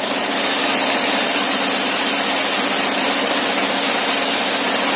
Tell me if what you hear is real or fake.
real